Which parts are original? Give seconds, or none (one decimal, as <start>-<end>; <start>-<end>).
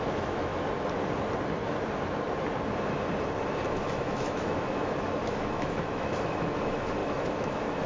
0.5-3.7